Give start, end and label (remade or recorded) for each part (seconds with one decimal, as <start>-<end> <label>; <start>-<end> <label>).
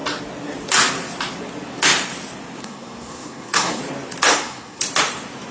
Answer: 0.0-2.6 recorded; 2.6-3.8 remade; 3.8-4.3 recorded; 4.3-4.8 remade; 4.8-5.5 recorded